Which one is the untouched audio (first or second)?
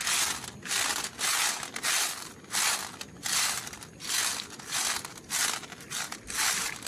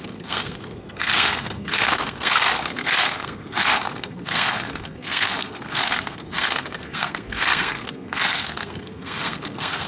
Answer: first